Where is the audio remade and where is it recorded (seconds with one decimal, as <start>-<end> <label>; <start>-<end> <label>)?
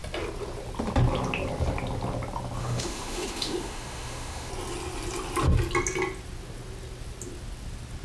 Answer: 0.0-2.6 recorded; 2.6-4.5 remade; 4.5-8.0 recorded